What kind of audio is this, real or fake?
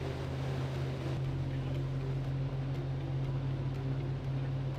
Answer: real